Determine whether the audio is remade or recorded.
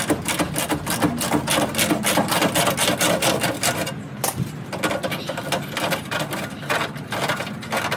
recorded